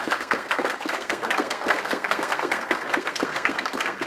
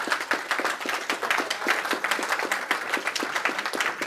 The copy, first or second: first